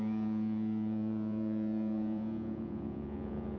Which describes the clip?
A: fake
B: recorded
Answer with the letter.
A